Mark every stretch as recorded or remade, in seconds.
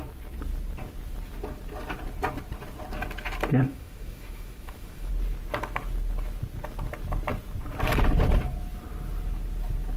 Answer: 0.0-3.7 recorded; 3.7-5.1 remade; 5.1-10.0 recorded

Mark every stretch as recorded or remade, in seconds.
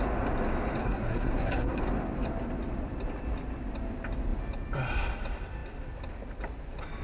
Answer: 0.0-0.8 recorded; 0.8-1.8 remade; 1.8-7.0 recorded